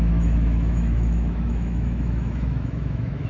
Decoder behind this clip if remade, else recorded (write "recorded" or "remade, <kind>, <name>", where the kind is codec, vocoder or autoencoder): remade, autoencoder, DAC-VAE